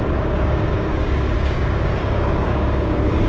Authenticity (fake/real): fake